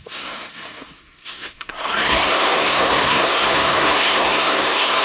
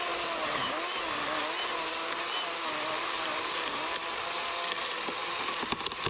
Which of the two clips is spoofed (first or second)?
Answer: first